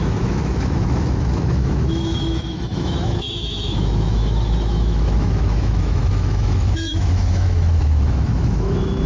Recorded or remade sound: remade